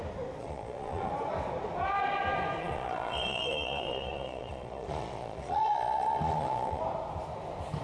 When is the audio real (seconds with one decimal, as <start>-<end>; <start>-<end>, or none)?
0.0-0.4; 1.1-2.6; 6.8-7.8